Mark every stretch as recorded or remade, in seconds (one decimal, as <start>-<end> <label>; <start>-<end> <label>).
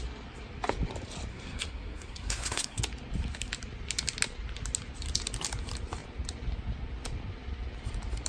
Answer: 0.0-1.3 recorded; 1.3-2.8 remade; 2.8-8.3 recorded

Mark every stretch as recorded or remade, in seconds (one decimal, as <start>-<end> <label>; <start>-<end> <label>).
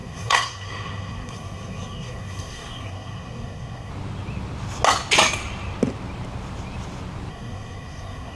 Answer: 0.0-3.9 remade; 3.9-7.3 recorded; 7.3-8.4 remade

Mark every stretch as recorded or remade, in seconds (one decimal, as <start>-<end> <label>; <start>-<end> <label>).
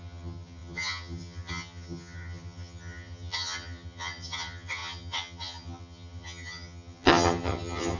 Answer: 0.0-8.0 remade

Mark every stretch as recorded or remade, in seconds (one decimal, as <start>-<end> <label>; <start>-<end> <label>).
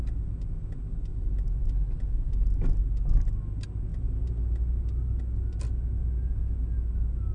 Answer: 0.0-1.1 recorded; 1.1-1.6 remade; 1.6-3.9 recorded; 3.9-4.4 remade; 4.4-7.3 recorded